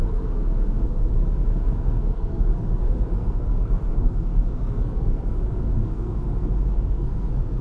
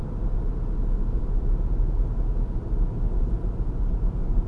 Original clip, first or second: second